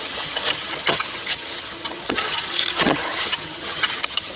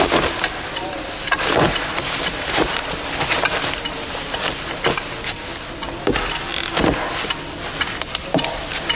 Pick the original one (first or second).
second